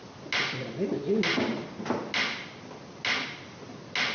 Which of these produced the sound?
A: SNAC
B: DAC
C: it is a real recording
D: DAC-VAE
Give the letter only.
C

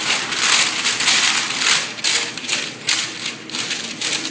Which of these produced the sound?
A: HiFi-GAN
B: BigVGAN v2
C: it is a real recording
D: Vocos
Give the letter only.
C